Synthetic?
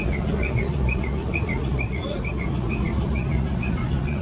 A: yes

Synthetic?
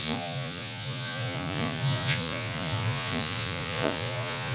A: yes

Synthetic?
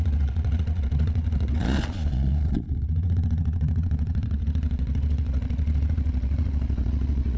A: yes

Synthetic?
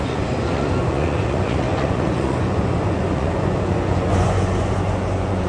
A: yes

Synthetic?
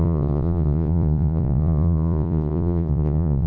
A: yes